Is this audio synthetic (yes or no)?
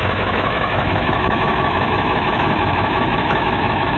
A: yes